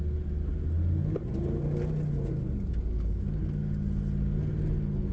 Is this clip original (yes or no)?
yes